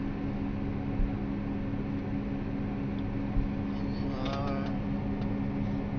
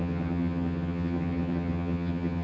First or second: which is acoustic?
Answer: first